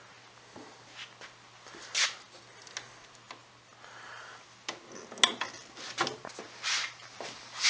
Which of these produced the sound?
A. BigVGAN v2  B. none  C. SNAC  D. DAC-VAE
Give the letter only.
B